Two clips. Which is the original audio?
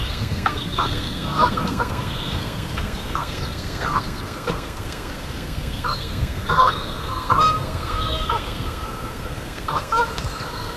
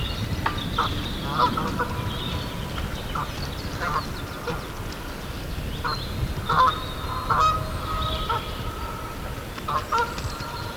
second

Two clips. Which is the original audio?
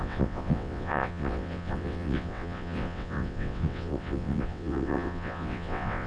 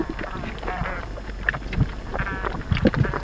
second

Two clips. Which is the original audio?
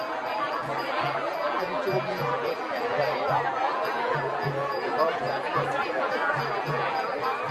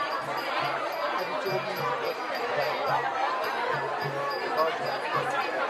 second